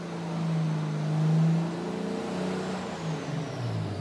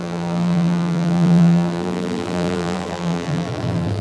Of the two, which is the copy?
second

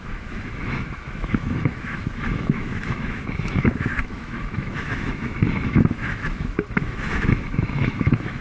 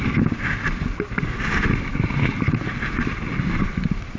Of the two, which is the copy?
first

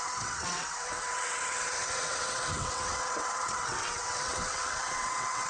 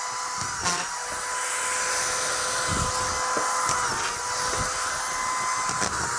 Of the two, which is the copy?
first